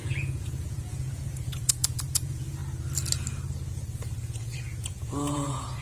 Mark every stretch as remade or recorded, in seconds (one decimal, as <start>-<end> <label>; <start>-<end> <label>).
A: 0.0-2.6 remade; 2.6-3.7 recorded; 3.7-5.8 remade